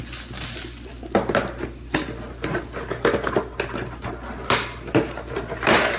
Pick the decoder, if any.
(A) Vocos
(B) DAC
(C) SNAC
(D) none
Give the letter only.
D